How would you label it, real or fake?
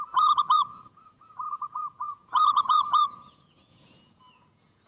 fake